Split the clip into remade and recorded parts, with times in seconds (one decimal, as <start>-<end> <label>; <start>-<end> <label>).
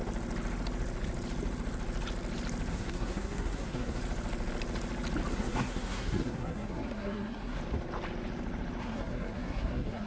0.0-2.7 recorded; 2.7-4.0 remade; 4.0-5.3 recorded; 5.3-7.6 remade; 7.6-8.8 recorded; 8.8-10.1 remade